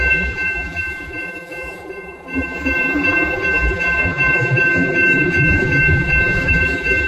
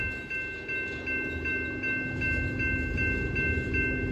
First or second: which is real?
second